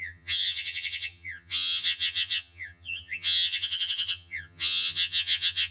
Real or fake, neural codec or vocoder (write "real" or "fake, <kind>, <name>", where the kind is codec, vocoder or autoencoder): fake, vocoder, HiFi-GAN